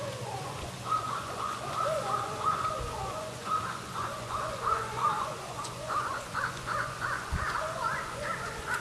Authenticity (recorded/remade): remade